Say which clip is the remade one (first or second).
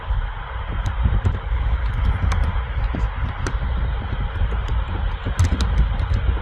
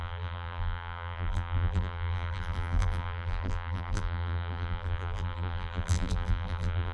second